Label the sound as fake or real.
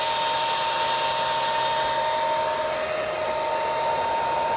real